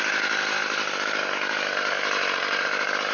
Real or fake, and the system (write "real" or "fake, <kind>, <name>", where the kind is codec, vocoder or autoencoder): real